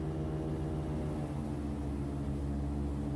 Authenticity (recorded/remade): recorded